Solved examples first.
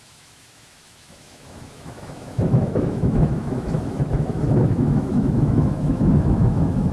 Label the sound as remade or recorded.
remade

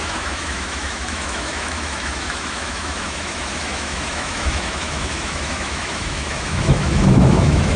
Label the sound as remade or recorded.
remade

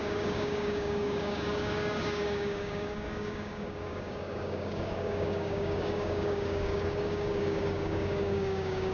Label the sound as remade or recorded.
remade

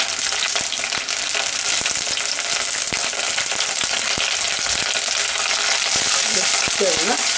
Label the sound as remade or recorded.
recorded